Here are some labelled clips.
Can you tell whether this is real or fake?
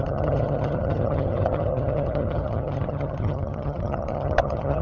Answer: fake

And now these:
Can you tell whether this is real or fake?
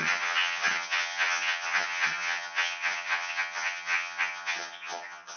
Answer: fake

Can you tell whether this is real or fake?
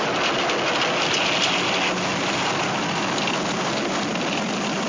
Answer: real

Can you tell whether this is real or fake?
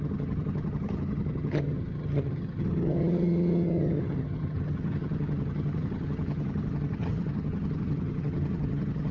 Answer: fake